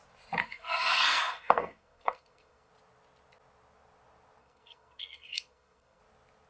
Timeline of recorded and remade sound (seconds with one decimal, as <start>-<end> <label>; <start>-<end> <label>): 0.0-0.4 recorded; 0.4-2.7 remade; 2.7-4.4 recorded; 4.4-6.0 remade; 6.0-6.5 recorded